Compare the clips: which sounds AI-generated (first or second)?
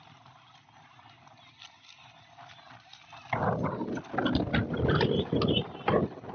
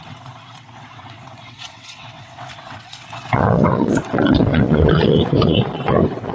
second